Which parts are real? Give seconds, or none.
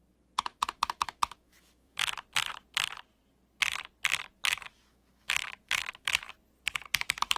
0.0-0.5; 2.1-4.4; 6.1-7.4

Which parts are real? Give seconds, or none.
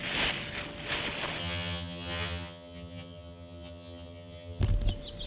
0.0-1.4; 4.6-5.3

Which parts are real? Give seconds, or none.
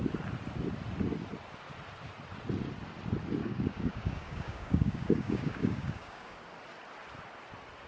0.0-3.4; 6.4-7.9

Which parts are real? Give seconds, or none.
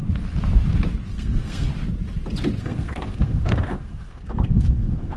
0.0-1.1; 1.7-2.6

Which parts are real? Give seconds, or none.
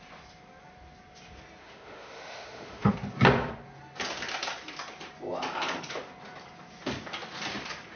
0.0-1.6; 2.9-8.0